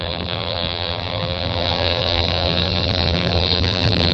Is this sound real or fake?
fake